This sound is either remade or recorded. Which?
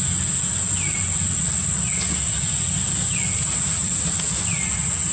recorded